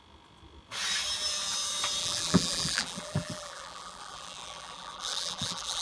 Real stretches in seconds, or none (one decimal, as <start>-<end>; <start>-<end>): 0.0-2.0